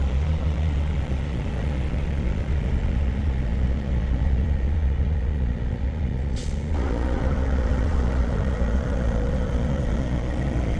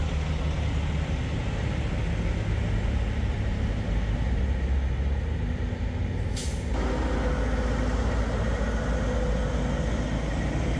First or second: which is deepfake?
first